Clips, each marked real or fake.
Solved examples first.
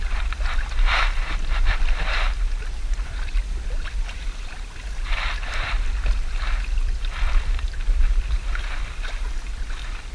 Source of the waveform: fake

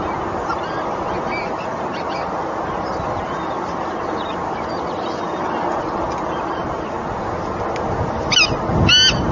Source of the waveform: real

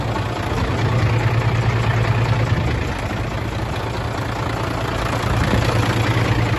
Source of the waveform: real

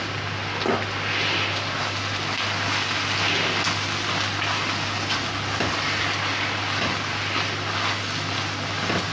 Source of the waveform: real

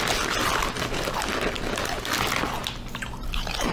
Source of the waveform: real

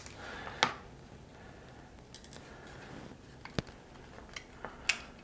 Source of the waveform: real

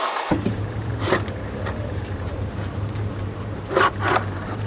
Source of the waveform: fake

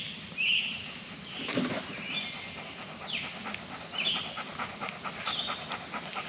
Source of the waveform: real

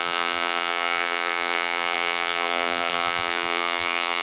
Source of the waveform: fake